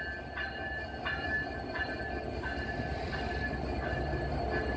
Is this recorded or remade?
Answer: recorded